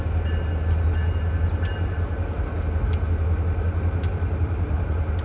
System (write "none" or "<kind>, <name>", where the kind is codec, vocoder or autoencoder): none